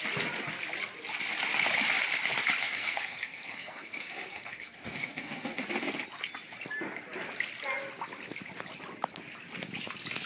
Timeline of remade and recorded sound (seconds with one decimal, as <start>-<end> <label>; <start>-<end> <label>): 0.0-2.6 recorded; 2.6-5.6 remade; 5.6-10.3 recorded